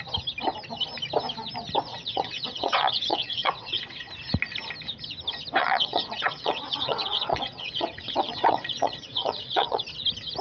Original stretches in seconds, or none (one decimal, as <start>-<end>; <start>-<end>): 0.0-1.9; 4.1-5.6; 9.8-10.4